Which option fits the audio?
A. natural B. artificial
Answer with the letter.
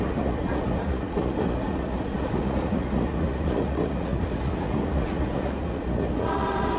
B